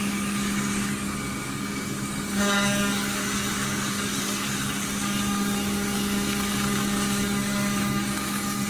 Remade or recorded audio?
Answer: remade